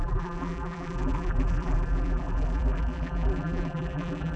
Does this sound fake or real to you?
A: fake